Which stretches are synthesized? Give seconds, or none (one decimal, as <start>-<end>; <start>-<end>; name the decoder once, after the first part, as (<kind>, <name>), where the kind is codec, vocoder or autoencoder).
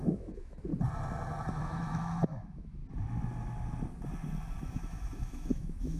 0.0-0.7 (autoencoder, DAC-VAE); 1.5-2.8; 4.6-6.0